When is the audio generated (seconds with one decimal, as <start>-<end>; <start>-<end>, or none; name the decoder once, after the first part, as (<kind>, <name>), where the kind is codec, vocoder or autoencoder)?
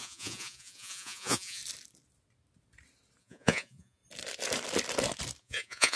0.0-1.6 (vocoder, Vocos); 3.2-4.0; 5.4-6.0